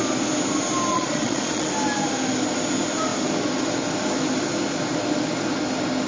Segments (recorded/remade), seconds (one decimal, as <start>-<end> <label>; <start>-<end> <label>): 0.0-0.9 recorded; 0.9-1.7 remade; 1.7-6.1 recorded